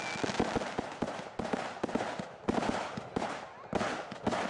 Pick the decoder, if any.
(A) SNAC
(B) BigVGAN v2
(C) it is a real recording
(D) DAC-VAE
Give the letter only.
C